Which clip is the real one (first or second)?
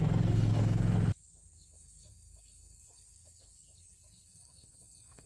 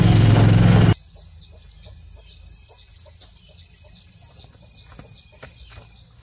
second